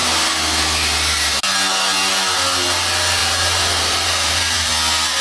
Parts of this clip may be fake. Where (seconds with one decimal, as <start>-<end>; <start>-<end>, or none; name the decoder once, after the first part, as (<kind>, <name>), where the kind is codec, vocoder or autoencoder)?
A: 3.2-4.7 (vocoder, BigVGAN v2)